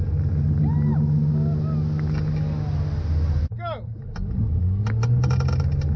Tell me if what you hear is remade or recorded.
recorded